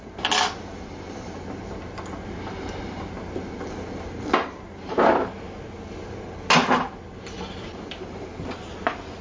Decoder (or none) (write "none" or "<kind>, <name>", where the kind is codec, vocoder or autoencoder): none